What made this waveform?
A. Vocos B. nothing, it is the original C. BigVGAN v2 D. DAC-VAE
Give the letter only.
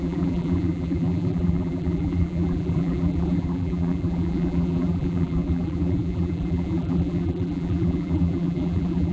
C